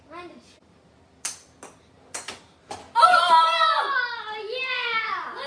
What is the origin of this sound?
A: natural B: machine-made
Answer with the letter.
A